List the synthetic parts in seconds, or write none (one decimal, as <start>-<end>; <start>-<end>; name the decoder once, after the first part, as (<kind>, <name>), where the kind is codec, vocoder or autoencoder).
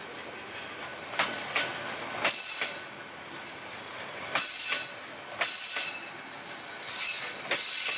none